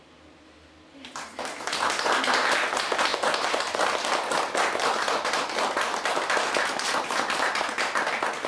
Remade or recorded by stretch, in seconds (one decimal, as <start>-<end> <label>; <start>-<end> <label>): 0.0-8.5 recorded